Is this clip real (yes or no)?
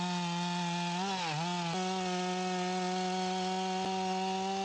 yes